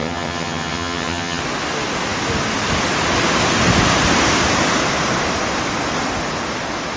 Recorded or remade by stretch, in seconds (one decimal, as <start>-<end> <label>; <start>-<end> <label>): 0.0-1.4 remade; 1.4-7.0 recorded